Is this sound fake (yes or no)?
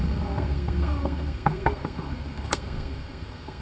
yes